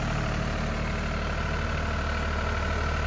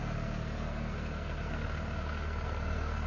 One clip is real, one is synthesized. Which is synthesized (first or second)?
second